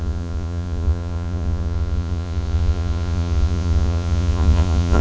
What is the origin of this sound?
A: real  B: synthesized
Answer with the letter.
B